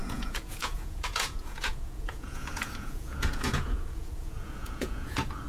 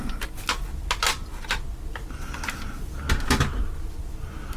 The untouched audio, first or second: second